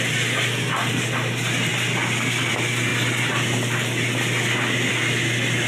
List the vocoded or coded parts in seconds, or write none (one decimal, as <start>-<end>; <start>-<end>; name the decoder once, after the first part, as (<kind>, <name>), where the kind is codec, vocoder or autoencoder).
none